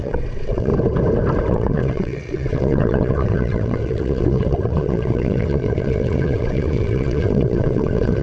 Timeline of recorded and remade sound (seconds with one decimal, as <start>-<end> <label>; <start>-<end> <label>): 0.0-0.7 remade; 0.7-1.5 recorded; 1.5-8.2 remade